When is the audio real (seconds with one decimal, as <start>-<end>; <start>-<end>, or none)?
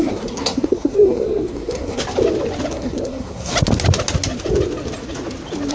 2.0-2.7; 3.5-5.7